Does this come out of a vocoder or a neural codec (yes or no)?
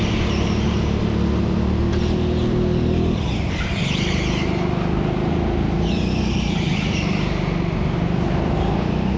no